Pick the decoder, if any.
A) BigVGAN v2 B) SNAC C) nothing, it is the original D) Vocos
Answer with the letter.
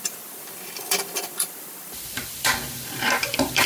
A